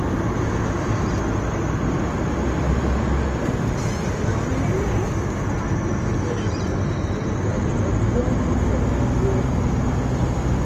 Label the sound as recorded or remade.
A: recorded